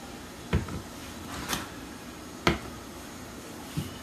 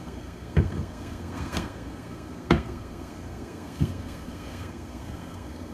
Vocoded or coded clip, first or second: second